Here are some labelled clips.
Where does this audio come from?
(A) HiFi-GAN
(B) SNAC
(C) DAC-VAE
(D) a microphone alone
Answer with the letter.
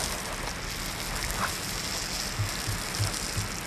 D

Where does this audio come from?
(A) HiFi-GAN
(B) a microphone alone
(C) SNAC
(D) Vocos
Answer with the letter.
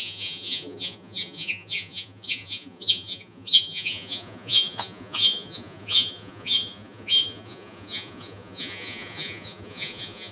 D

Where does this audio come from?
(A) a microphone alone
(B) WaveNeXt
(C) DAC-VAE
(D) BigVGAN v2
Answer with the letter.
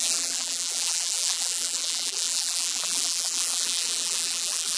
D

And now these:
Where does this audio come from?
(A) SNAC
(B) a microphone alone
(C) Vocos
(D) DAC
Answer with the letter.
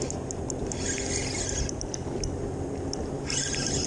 B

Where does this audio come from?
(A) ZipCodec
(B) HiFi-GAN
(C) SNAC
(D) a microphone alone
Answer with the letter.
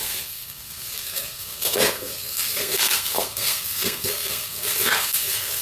C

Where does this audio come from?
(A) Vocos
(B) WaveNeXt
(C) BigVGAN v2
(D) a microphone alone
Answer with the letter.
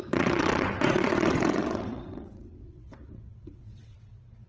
B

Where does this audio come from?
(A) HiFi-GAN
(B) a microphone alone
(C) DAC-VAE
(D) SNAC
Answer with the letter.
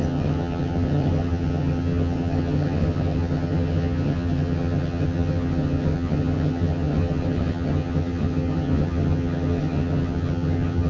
A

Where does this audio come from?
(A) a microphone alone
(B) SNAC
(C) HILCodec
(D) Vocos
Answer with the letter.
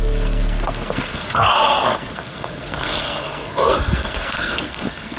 B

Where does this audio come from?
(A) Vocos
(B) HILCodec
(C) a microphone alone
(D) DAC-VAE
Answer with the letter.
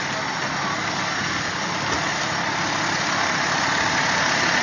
C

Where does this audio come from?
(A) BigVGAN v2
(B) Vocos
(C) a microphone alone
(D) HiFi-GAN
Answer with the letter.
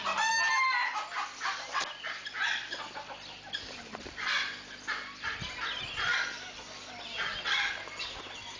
C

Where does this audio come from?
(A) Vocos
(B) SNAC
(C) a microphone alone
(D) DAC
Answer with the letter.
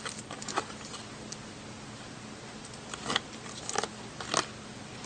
C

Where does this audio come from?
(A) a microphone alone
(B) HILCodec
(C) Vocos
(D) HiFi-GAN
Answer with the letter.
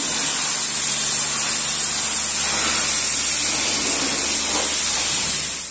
A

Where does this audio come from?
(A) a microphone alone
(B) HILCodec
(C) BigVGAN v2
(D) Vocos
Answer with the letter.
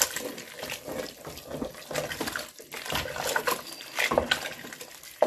A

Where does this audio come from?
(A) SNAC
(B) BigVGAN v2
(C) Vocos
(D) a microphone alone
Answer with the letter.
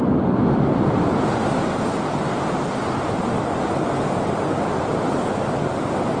D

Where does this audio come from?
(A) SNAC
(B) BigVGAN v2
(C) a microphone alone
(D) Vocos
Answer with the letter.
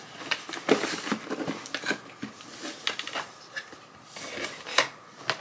C